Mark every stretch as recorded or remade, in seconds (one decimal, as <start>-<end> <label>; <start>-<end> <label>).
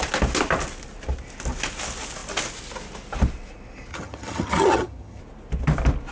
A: 0.0-3.9 recorded; 3.9-5.2 remade; 5.2-6.1 recorded